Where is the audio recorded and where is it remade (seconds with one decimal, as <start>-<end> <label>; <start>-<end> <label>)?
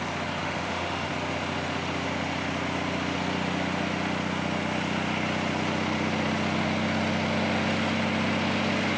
0.0-0.4 recorded; 0.4-1.1 remade; 1.1-9.0 recorded